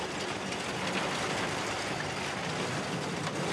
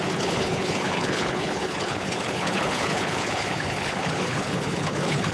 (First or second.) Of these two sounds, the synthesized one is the second